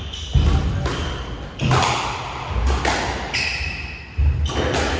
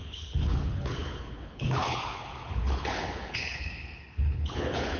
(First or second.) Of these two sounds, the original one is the first